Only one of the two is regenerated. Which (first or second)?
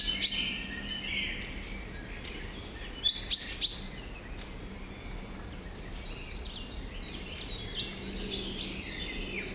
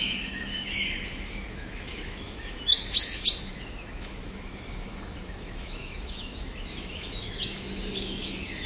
second